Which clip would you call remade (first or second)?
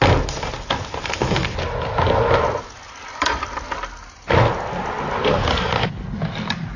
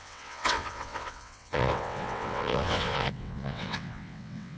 second